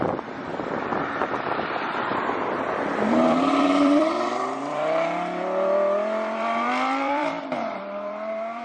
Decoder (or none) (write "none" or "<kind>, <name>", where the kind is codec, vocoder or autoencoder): vocoder, BigVGAN v2